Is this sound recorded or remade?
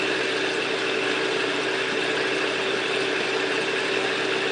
recorded